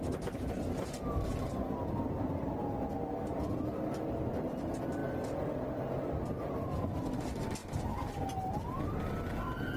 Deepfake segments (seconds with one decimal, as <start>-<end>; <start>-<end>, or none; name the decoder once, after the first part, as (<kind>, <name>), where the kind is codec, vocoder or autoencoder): none